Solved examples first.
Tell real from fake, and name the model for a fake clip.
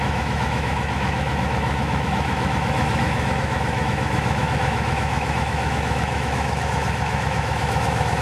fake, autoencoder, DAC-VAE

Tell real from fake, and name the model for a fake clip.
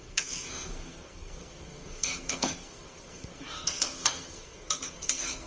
fake, codec, SNAC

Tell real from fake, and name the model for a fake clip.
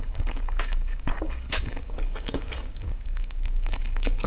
fake, codec, DAC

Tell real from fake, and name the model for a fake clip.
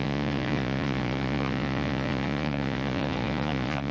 fake, vocoder, Vocos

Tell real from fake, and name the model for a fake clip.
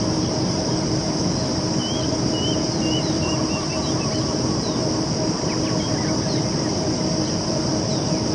fake, vocoder, BigVGAN v2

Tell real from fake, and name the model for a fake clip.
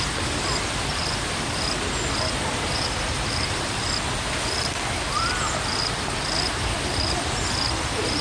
real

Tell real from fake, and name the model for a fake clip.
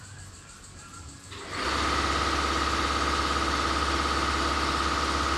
real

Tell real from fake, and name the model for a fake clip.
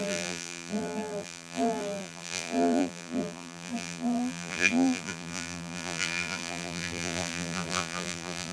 fake, vocoder, BigVGAN v2